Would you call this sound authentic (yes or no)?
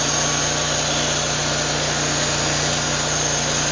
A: yes